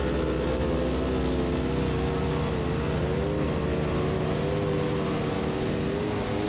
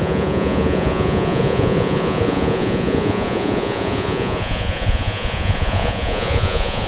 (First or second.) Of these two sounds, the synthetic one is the second